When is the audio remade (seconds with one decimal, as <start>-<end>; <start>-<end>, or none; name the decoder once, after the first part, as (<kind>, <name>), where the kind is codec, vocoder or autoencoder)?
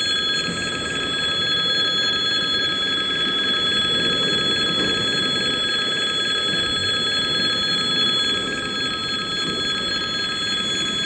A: none